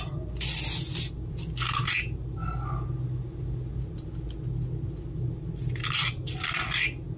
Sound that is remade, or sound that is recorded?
recorded